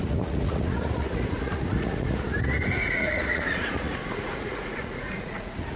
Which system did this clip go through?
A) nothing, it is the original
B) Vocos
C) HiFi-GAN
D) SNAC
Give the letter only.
B